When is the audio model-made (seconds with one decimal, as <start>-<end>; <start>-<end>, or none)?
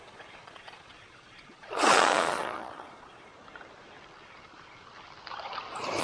0.0-3.3